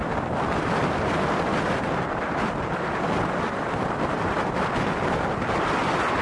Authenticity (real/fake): fake